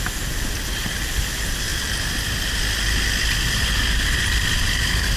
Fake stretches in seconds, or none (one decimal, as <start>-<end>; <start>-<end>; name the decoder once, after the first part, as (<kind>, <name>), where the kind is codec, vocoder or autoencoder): 1.7-4.8 (vocoder, BigVGAN v2)